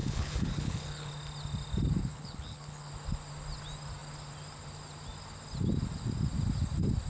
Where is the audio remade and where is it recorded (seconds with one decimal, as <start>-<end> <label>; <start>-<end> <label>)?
0.0-1.1 remade; 1.1-2.0 recorded; 2.0-2.9 remade; 2.9-7.1 recorded